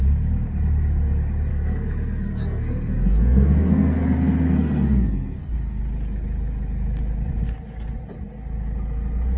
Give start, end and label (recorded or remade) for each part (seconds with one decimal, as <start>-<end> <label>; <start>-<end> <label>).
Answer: 0.0-1.5 recorded; 1.5-5.8 remade; 5.8-9.4 recorded